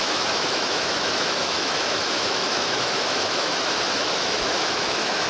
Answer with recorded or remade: remade